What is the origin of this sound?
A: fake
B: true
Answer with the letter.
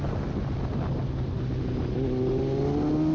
B